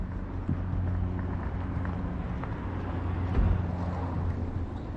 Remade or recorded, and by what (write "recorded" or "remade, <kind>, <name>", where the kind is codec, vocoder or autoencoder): recorded